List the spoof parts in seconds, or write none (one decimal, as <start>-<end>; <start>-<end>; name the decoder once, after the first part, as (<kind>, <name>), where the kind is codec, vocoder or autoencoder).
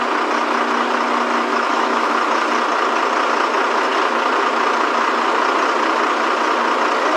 1.5-2.1 (autoencoder, DAC-VAE)